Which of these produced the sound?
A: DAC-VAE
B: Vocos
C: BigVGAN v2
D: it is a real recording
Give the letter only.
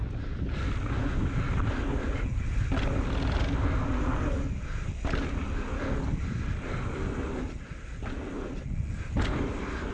D